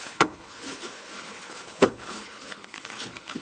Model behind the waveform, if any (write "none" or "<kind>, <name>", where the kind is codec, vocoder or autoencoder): codec, HILCodec